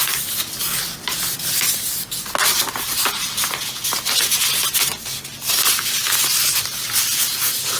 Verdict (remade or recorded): recorded